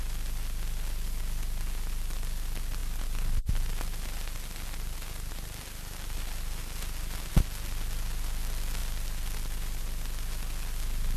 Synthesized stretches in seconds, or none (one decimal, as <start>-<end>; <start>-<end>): none